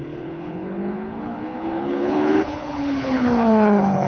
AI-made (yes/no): yes